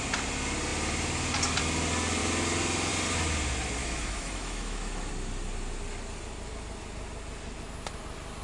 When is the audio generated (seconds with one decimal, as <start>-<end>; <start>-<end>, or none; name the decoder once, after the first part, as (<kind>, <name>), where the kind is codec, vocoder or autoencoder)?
3.8-5.1 (autoencoder, DAC-VAE)